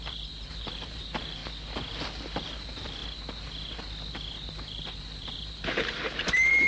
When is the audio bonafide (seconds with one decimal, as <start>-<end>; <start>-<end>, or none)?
1.4-2.6; 3.0-4.5